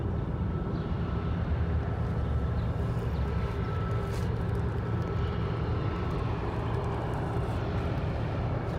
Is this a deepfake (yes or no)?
no